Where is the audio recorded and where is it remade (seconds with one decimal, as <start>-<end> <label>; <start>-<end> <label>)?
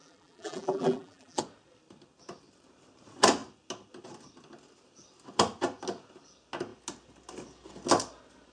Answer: 0.0-1.4 remade; 1.4-8.5 recorded